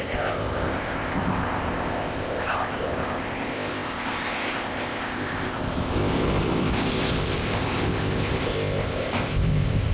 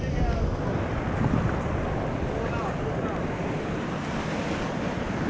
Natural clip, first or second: second